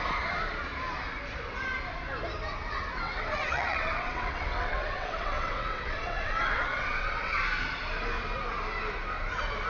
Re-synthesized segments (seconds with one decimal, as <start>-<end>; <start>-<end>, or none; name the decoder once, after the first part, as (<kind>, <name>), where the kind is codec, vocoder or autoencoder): 2.6-7.4 (vocoder, WaveNeXt)